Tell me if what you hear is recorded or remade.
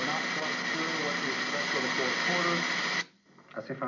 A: recorded